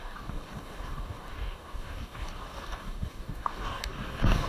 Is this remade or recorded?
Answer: remade